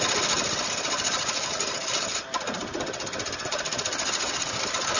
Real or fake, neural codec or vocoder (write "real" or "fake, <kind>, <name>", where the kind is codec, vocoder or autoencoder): real